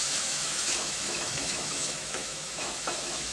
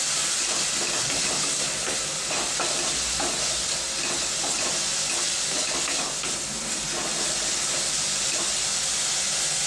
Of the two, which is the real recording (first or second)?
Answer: second